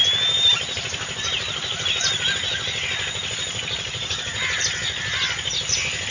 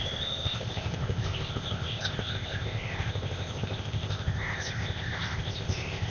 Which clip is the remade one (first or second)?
second